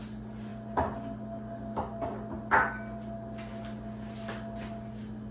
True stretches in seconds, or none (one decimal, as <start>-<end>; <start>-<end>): 0.0-5.3